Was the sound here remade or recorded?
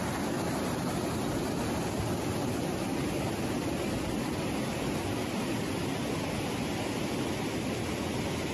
recorded